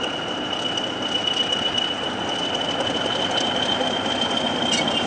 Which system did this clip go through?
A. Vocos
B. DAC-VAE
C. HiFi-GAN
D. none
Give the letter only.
D